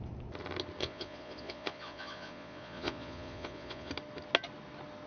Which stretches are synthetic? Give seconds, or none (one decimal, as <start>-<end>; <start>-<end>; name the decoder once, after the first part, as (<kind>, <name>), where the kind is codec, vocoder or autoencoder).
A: 0.8-3.9 (vocoder, Vocos)